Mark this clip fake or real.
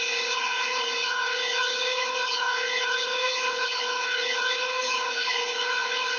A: fake